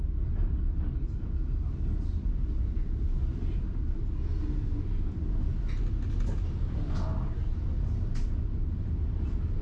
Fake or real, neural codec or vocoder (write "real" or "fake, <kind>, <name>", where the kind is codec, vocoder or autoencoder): real